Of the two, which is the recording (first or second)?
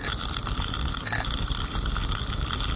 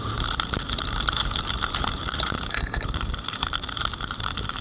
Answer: first